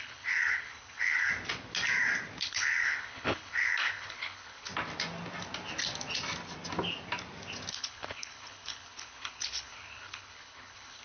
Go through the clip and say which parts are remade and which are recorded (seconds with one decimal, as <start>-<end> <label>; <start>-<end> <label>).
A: 0.0-1.3 remade; 1.3-2.4 recorded; 2.4-4.7 remade; 4.7-7.7 recorded; 7.7-11.0 remade